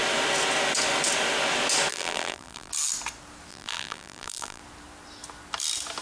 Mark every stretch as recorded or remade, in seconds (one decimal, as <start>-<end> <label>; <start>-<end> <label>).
0.0-1.9 recorded; 1.9-2.7 remade; 2.7-3.5 recorded; 3.5-4.6 remade; 4.6-6.0 recorded